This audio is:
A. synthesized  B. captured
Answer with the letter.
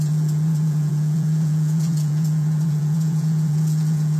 A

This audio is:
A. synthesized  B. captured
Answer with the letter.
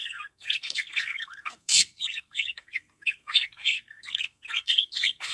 A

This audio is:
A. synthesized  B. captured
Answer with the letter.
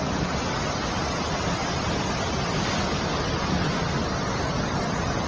B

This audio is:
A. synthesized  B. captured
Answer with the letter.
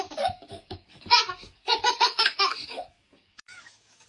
A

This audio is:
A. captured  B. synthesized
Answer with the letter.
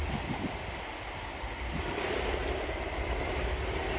A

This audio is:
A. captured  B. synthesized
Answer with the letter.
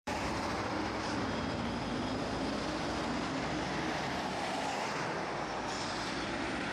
B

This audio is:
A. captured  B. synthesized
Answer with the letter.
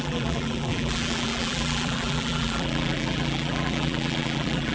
B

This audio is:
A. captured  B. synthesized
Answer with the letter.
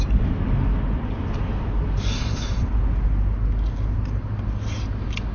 A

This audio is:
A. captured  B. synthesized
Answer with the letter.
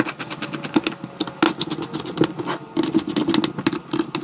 A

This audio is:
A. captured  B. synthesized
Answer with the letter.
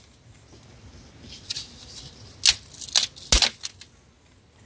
A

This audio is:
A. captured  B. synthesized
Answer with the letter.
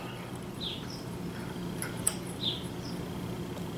A